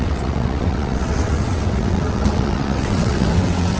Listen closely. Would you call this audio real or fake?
fake